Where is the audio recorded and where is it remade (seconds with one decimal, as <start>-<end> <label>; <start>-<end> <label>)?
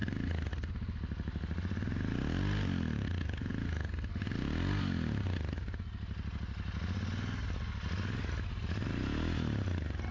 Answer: 0.0-10.1 recorded